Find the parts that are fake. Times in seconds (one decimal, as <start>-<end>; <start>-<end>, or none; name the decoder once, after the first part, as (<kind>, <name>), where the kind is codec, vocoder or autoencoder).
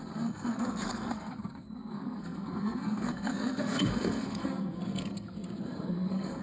0.0-6.4 (codec, SNAC)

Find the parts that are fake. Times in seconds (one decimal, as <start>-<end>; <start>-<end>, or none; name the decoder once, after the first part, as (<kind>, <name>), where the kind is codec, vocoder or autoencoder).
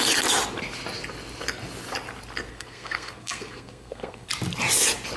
2.5-4.3 (codec, SNAC)